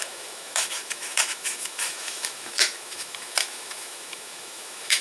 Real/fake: fake